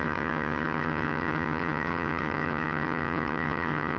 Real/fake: fake